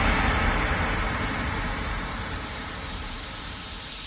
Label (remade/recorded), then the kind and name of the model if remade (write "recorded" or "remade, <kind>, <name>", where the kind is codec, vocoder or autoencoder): remade, vocoder, BigVGAN v2